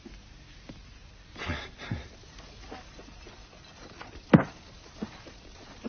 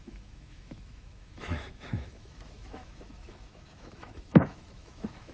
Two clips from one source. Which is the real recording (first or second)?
first